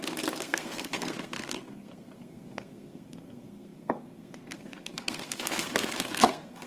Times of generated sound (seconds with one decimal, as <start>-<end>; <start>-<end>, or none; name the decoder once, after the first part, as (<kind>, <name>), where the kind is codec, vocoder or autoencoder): 0.0-6.7 (codec, SNAC)